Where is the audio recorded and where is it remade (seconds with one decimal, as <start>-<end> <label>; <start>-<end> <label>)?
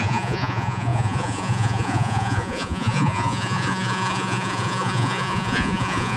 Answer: 0.0-6.2 remade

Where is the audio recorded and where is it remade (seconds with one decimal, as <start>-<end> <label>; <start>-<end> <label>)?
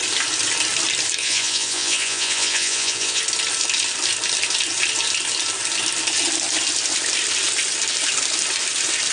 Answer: 0.0-1.2 recorded; 1.2-3.2 remade; 3.2-9.1 recorded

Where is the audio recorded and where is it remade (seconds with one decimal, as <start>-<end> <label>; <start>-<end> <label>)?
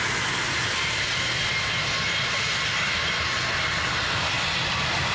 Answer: 0.0-5.1 recorded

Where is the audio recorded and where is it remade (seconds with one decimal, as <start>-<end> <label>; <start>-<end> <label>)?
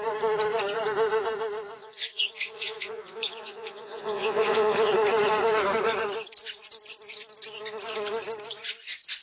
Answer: 0.0-1.8 recorded; 1.8-4.9 remade; 4.9-9.2 recorded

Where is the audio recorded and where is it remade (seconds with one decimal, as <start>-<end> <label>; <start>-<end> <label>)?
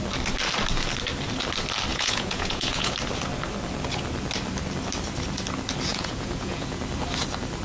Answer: 0.0-1.9 recorded; 1.9-2.9 remade; 2.9-5.9 recorded; 5.9-6.8 remade; 6.8-7.6 recorded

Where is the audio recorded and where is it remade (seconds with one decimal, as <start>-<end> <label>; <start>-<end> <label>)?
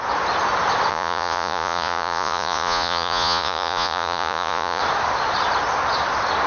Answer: 0.0-0.9 recorded; 0.9-4.8 remade; 4.8-6.5 recorded